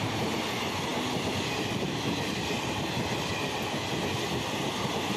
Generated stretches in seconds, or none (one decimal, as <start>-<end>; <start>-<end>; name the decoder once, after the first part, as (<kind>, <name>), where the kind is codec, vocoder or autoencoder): none